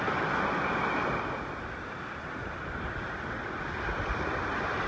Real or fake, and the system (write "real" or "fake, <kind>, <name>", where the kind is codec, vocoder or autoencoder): real